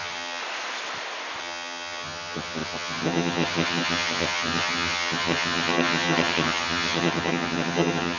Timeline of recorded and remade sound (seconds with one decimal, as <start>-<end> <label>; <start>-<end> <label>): 0.0-0.4 remade; 0.4-1.4 recorded; 1.4-8.2 remade